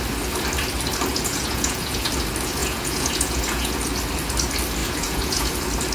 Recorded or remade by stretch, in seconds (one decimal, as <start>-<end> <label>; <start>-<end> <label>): 0.0-1.1 recorded; 1.1-2.1 remade; 2.1-2.6 recorded; 2.6-3.7 remade; 3.7-4.8 recorded; 4.8-5.5 remade; 5.5-5.9 recorded